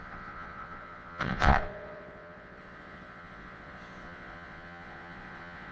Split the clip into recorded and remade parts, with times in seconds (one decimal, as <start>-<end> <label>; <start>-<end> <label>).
0.0-5.7 remade